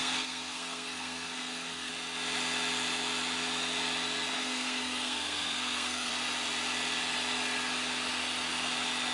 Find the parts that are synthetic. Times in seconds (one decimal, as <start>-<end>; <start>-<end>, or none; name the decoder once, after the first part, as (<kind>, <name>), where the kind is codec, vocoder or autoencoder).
0.0-1.9 (codec, SNAC); 4.3-6.1

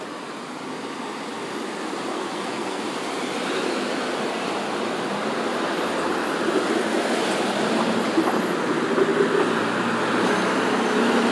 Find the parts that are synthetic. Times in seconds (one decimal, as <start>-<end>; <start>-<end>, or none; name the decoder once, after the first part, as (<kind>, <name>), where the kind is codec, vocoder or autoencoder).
2.1-2.8 (codec, SNAC)

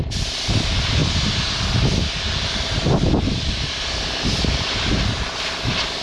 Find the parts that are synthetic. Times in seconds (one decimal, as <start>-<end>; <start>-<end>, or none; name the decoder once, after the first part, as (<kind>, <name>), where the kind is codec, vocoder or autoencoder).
none

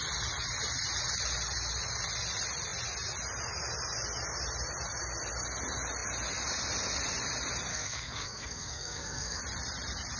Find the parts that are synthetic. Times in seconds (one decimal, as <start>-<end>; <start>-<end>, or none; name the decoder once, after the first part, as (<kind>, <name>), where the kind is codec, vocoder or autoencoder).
7.7-9.4 (codec, SNAC)